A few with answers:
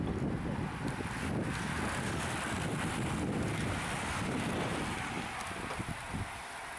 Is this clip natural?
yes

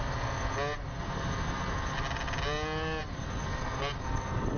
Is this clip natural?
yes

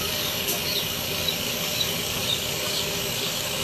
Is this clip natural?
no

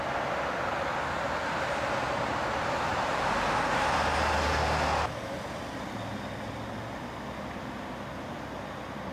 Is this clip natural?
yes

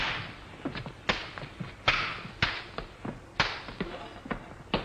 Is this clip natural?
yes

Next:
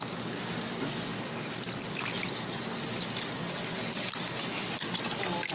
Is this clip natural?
yes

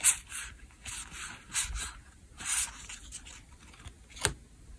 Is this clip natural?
yes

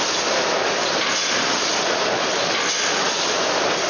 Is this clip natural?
yes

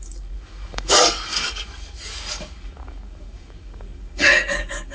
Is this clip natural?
no